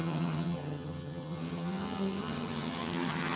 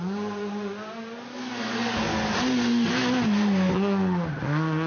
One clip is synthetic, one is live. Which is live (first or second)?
second